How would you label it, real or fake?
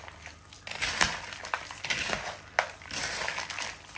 real